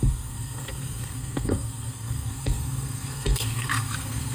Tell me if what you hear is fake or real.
fake